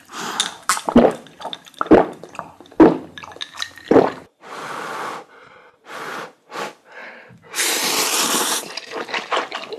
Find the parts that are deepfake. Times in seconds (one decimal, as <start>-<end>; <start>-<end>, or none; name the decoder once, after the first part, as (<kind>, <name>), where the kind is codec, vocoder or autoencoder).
none